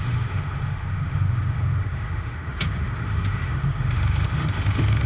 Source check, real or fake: fake